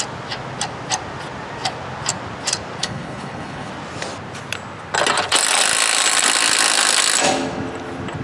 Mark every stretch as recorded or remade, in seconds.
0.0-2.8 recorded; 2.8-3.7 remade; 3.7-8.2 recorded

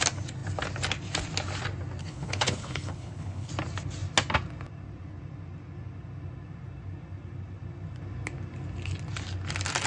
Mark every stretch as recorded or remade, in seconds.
0.0-2.0 recorded; 2.0-3.5 remade; 3.5-9.9 recorded